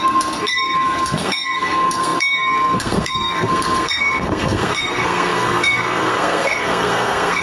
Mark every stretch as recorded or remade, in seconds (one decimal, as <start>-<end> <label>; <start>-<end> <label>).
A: 0.0-7.4 remade